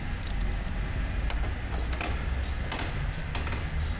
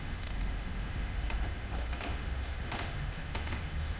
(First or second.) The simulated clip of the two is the second